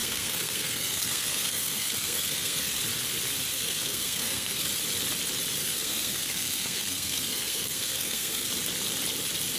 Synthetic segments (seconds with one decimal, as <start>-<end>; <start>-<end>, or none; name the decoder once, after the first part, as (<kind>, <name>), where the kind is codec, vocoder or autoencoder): 0.0-2.8 (codec, SNAC); 3.5-4.7; 5.6-8.5